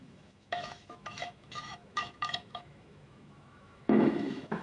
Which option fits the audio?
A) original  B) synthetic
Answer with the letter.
B